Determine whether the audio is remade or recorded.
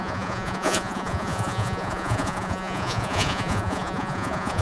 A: remade